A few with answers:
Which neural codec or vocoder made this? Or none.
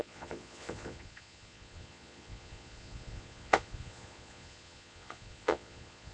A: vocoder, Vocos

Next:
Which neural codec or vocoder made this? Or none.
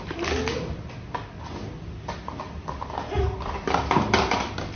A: none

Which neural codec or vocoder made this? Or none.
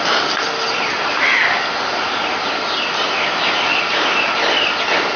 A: none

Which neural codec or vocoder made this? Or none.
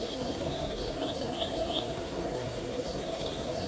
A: codec, SNAC